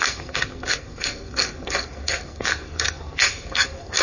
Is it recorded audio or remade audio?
remade